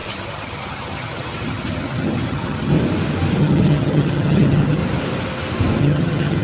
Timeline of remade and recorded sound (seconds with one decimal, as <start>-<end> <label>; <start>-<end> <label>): 0.0-2.7 remade; 2.7-3.4 recorded; 3.4-4.8 remade; 4.8-5.8 recorded; 5.8-6.4 remade